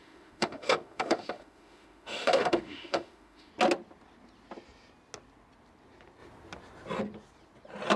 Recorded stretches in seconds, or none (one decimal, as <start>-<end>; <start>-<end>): 3.5-8.0